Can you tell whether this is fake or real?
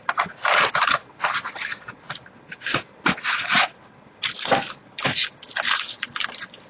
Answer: real